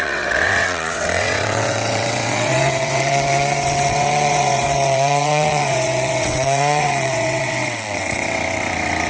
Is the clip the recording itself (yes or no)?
no